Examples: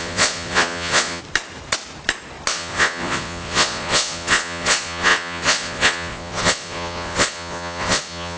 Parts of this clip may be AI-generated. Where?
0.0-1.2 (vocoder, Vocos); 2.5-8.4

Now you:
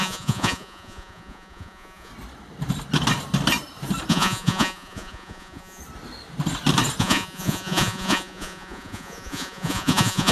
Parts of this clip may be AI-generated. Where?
0.0-2.1 (vocoder, Vocos); 4.1-5.8; 7.0-10.3